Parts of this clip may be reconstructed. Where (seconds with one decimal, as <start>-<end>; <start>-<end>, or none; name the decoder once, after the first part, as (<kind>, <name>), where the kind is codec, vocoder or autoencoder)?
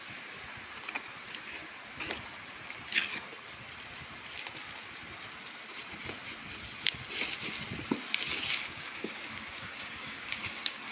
8.3-10.9 (codec, DAC)